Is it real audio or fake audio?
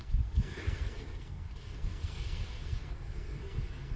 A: fake